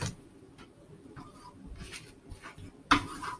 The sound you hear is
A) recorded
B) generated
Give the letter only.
A